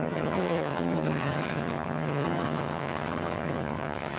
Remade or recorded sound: remade